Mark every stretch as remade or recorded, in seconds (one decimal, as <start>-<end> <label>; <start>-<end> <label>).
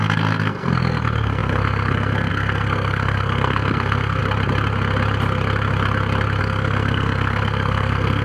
0.0-4.2 remade; 4.2-6.4 recorded; 6.4-8.2 remade